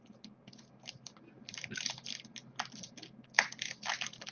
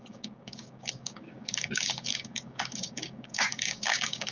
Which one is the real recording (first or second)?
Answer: first